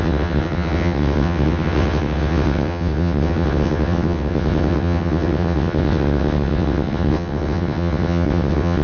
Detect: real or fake fake